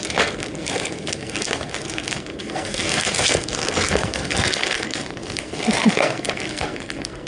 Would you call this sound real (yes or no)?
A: no